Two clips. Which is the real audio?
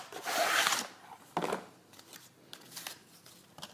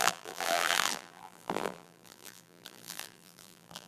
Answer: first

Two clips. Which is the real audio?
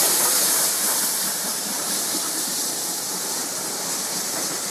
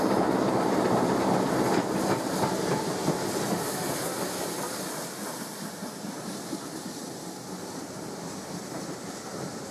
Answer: second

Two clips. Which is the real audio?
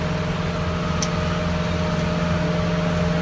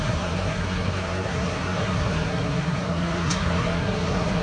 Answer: first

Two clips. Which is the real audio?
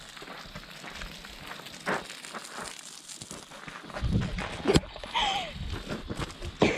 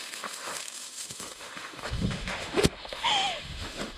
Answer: first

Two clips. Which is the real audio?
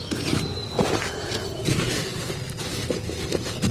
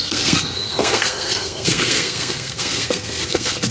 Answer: first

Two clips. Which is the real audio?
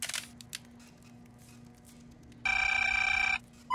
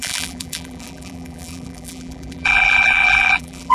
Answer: first